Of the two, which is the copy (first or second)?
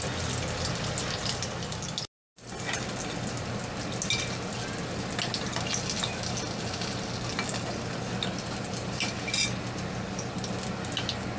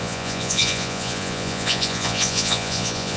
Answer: second